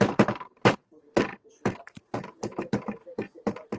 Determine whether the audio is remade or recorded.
remade